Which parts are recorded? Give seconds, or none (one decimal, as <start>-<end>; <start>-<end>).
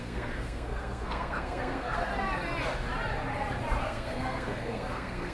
2.1-3.8